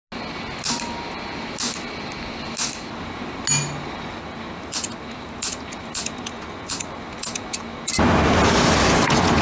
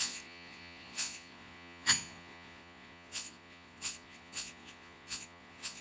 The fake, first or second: second